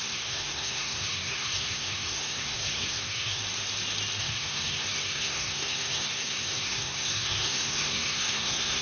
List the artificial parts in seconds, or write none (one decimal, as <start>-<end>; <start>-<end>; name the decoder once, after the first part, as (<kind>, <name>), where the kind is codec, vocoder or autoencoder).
0.0-3.4 (codec, SNAC); 4.2-8.8